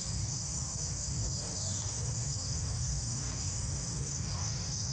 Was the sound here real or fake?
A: fake